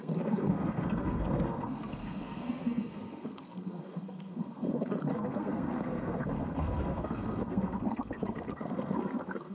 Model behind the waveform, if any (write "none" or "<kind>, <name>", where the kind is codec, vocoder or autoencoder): codec, SNAC